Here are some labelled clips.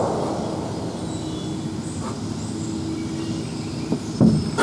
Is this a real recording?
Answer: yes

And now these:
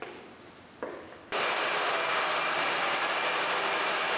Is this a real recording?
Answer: yes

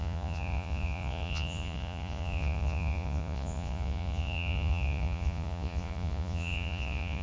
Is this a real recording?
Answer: no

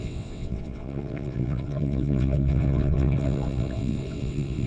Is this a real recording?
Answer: no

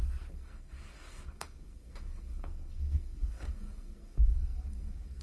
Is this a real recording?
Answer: no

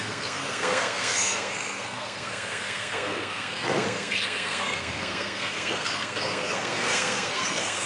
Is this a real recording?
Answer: no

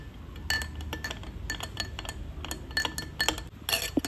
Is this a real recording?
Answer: yes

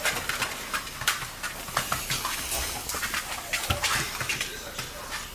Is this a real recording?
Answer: yes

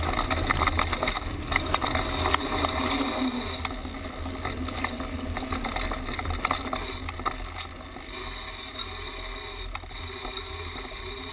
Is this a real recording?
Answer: yes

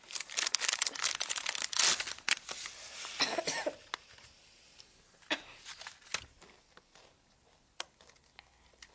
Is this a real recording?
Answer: yes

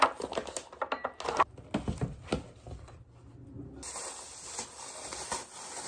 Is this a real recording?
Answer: yes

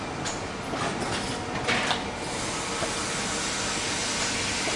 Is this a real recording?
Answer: yes